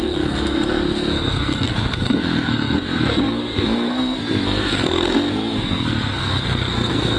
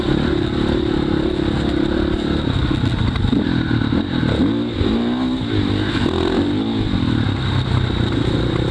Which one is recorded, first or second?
second